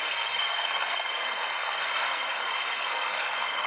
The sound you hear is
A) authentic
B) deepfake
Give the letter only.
B